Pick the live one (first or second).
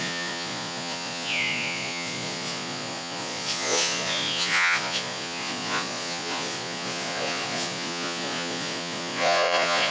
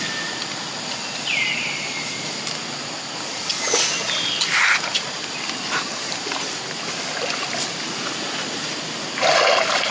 second